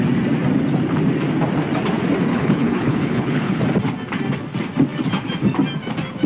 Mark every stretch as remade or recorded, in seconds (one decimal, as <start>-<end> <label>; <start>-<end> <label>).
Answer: 0.0-2.3 recorded; 2.3-3.6 remade; 3.6-6.3 recorded